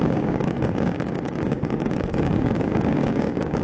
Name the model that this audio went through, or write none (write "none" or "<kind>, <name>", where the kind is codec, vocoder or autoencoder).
codec, DAC